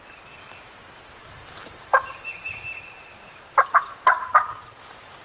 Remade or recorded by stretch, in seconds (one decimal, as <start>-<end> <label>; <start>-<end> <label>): 0.0-1.2 recorded; 1.2-4.3 remade; 4.3-5.2 recorded